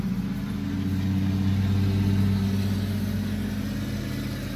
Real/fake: real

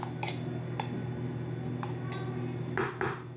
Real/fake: real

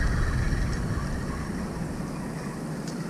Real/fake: real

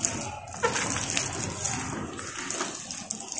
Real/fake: real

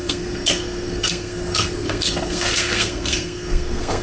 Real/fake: fake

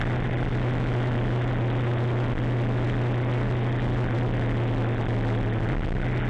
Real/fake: real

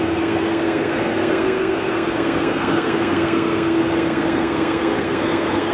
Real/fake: fake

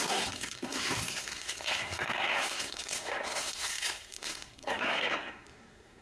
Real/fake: fake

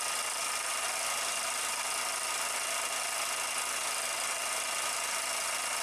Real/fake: real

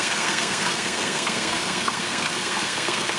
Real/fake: fake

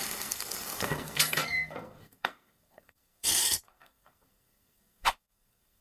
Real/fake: fake